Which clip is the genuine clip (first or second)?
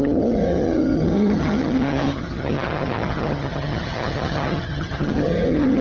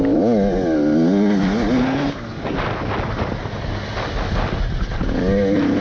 second